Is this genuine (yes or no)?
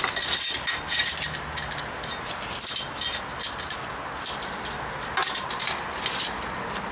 yes